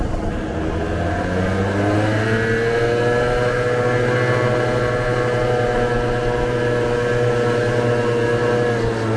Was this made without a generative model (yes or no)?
yes